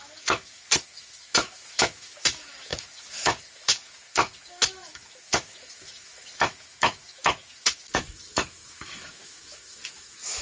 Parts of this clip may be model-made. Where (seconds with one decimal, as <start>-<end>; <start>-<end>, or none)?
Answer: 0.0-10.4

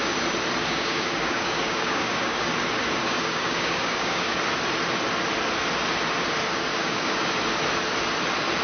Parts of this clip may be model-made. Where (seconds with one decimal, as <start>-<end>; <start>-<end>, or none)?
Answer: 0.6-2.5; 3.0-4.4; 6.7-7.3

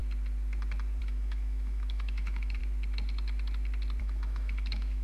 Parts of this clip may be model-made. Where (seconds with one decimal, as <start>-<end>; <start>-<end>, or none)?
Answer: 1.0-2.6; 4.0-5.0